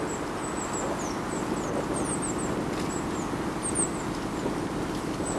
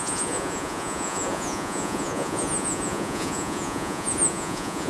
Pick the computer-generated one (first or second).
second